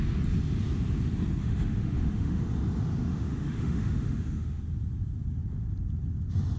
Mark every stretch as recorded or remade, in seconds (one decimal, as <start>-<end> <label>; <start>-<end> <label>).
0.0-1.4 recorded; 1.4-2.4 remade; 2.4-2.9 recorded; 2.9-4.6 remade; 4.6-6.6 recorded